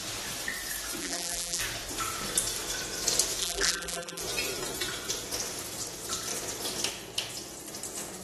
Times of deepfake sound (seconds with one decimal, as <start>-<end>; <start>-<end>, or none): 1.0-1.6; 3.4-4.2